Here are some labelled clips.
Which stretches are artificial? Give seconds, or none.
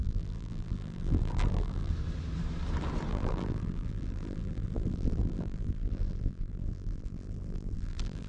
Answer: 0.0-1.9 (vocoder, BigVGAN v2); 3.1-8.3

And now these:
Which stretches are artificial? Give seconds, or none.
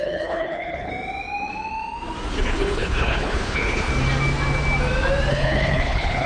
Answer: 0.0-0.9 (codec, HILCodec); 2.4-3.9; 5.3-6.3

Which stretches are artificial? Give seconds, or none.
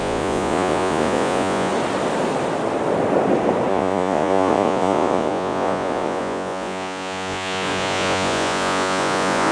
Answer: 0.0-1.7 (vocoder, Vocos); 3.7-9.5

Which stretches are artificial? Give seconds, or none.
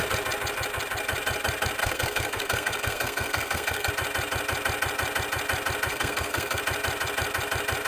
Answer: 1.8-3.9 (codec, SNAC); 5.9-6.6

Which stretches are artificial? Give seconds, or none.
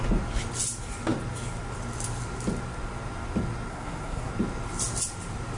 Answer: 3.7-4.3 (codec, SNAC)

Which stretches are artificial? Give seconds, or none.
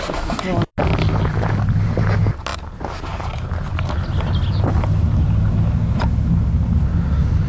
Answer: none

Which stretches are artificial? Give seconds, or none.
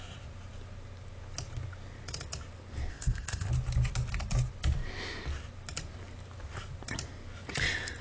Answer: 2.9-3.5 (codec, ZipCodec)